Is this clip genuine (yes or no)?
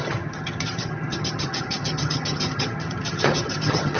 no